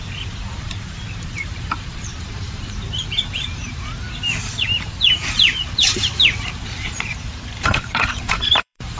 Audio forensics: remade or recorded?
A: remade